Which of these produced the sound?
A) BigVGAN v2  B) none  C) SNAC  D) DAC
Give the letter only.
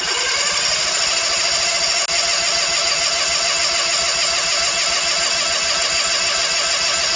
B